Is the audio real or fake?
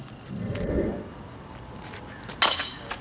real